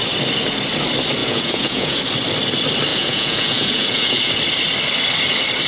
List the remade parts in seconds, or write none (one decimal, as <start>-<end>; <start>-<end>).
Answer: 1.2-2.0; 2.9-4.4